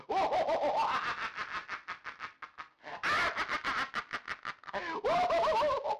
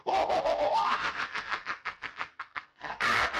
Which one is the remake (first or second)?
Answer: second